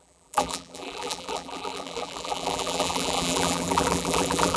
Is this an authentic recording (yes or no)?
no